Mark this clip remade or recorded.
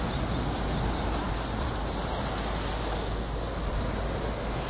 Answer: recorded